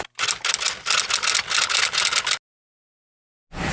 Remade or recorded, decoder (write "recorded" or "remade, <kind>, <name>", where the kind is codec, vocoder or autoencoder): recorded